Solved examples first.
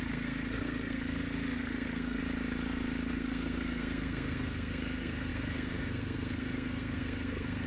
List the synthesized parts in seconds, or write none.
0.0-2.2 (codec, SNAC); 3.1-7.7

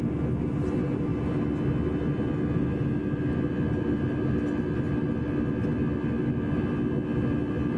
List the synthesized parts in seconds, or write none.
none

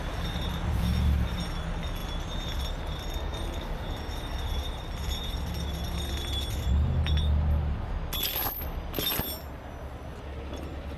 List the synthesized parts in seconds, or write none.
none

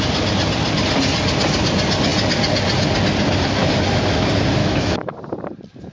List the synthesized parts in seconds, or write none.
4.6-5.1 (autoencoder, DAC-VAE)

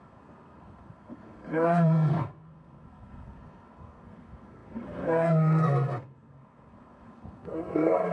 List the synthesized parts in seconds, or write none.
0.0-8.1 (codec, SNAC)